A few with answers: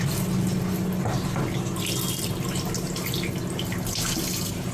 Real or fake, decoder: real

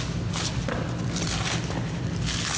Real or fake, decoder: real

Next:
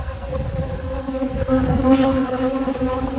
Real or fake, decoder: fake, codec, SNAC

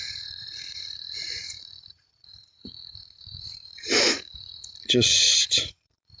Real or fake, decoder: fake, vocoder, Vocos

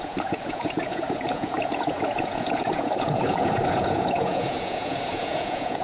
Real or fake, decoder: fake, vocoder, Vocos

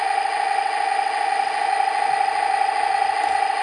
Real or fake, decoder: real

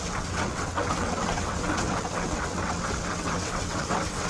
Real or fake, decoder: fake, vocoder, WaveNeXt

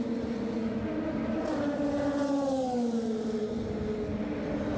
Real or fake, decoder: real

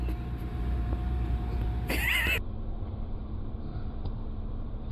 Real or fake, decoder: fake, vocoder, BigVGAN v2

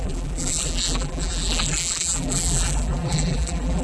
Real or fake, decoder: fake, vocoder, BigVGAN v2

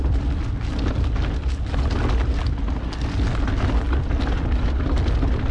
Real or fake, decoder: real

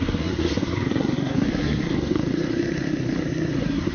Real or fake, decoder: fake, codec, SNAC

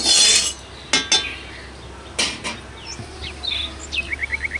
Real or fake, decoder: real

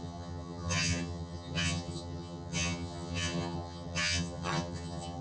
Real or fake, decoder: fake, vocoder, HiFi-GAN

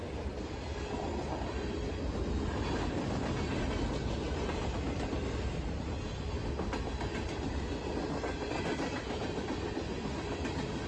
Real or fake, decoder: real